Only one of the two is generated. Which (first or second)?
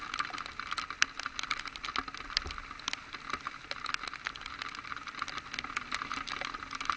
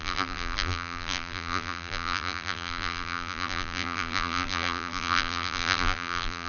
second